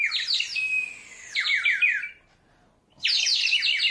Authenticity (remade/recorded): recorded